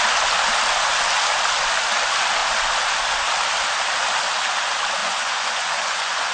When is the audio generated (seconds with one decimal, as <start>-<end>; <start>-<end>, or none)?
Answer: 5.0-6.3